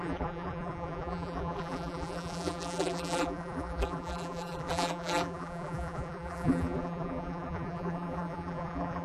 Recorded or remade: remade